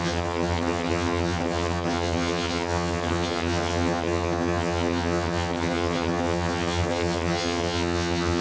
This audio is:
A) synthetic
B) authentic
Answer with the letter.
A